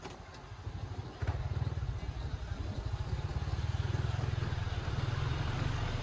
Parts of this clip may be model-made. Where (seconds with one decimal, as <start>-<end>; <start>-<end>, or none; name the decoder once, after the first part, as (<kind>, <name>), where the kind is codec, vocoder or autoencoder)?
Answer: 1.3-2.0 (vocoder, BigVGAN v2)